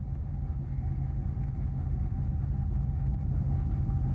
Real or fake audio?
fake